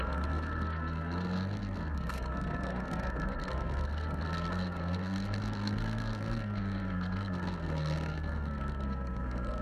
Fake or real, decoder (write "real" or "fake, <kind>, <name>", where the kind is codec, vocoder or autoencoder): fake, codec, SNAC